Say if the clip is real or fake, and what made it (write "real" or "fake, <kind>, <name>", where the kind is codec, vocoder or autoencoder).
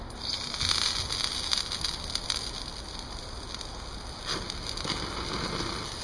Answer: real